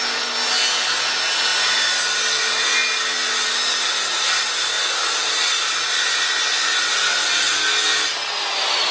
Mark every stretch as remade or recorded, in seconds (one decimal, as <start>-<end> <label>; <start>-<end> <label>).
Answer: 0.0-8.9 recorded

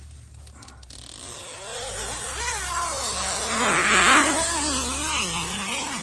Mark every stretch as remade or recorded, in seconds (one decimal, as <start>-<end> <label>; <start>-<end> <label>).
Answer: 0.0-1.7 recorded; 1.7-3.0 remade; 3.0-6.0 recorded

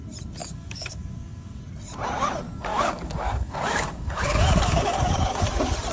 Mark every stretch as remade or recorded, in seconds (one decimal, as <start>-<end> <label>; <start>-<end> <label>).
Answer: 0.0-0.4 recorded; 0.4-1.6 remade; 1.6-2.7 recorded; 2.7-5.5 remade; 5.5-5.9 recorded